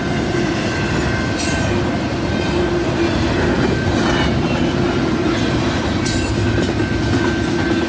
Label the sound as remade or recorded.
recorded